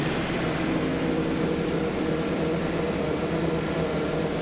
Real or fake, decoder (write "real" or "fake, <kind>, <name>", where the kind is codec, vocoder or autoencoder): real